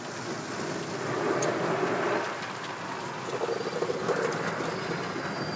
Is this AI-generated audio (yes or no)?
no